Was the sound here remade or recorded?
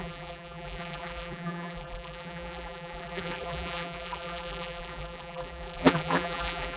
remade